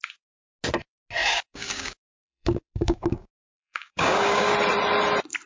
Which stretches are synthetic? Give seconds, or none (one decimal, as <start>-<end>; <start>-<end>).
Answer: 1.2-4.5